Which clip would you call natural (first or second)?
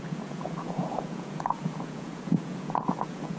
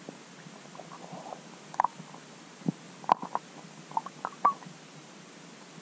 second